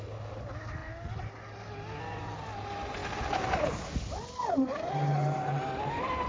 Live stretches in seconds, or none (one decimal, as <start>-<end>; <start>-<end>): 0.0-6.3